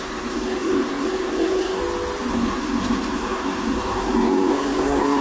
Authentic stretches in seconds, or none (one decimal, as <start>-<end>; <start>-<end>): 1.8-2.3